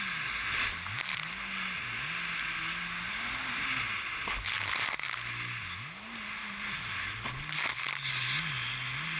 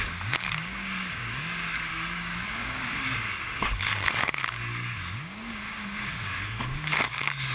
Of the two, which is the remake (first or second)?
second